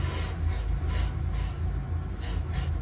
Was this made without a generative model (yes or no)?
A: yes